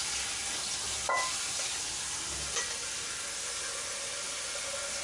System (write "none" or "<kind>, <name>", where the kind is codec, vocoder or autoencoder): none